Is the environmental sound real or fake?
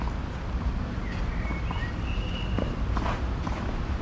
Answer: real